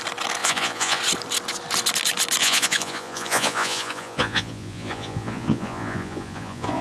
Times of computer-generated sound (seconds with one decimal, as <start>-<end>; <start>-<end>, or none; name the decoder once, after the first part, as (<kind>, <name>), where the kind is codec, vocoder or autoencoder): 0.4-1.0 (vocoder, Vocos); 2.4-6.8